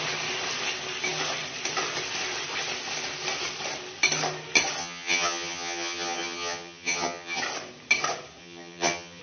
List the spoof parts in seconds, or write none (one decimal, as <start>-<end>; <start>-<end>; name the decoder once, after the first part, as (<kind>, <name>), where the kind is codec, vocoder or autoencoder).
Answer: 4.8-7.4 (vocoder, HiFi-GAN); 8.4-9.2